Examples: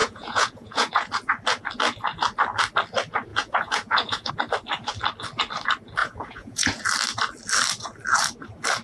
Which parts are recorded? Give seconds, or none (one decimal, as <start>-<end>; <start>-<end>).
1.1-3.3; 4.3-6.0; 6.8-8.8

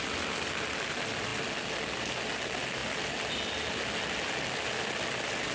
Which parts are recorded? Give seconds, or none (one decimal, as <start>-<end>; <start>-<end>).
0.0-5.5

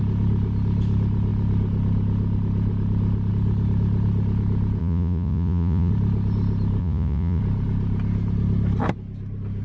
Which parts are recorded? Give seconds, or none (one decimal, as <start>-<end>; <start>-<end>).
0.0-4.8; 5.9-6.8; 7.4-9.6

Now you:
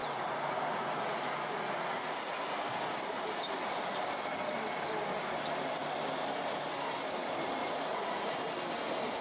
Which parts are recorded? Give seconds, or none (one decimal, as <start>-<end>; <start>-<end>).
2.4-7.6; 8.4-9.2

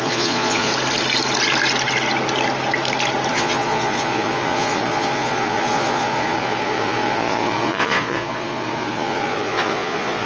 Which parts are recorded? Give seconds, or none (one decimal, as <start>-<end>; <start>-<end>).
0.7-3.3

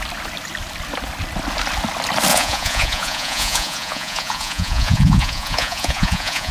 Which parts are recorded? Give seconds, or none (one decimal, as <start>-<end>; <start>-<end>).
0.0-2.3

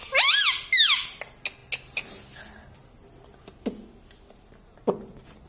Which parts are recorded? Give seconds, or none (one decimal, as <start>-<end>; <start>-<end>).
0.0-5.5

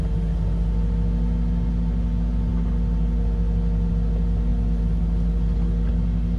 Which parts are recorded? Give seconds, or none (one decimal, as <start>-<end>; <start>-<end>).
0.0-6.4